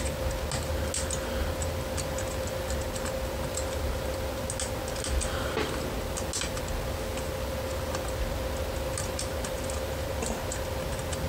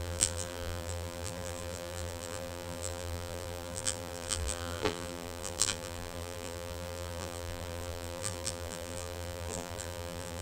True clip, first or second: first